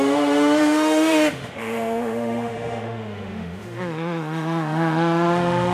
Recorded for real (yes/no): no